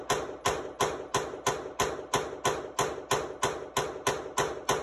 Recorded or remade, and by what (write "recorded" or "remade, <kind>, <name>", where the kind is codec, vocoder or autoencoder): recorded